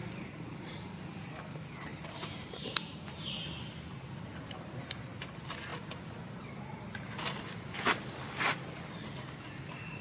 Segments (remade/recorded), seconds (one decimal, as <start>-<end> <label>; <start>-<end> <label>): 0.0-1.9 recorded; 1.9-3.3 remade; 3.3-5.7 recorded; 5.7-6.4 remade; 6.4-10.0 recorded